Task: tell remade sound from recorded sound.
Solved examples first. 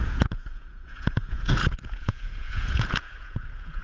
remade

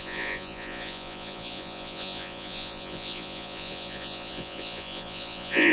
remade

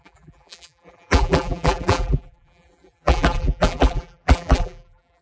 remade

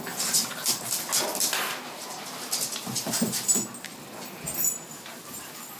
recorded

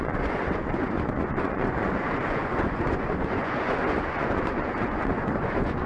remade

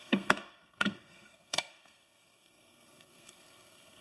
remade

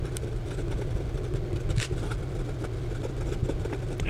recorded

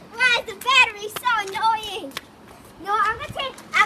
recorded